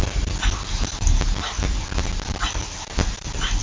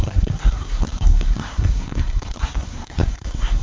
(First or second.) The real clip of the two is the first